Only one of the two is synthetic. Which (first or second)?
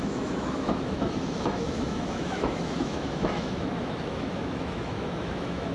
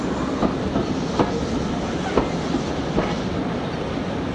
first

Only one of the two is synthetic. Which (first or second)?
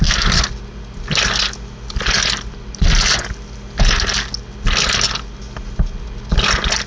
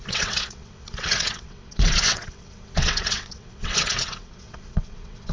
second